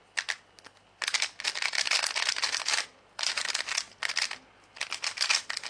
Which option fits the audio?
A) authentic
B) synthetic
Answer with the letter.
A